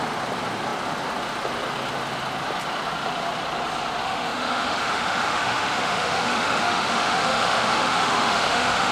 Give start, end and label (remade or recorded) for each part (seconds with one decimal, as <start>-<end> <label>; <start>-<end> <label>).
0.0-4.0 recorded; 4.0-8.9 remade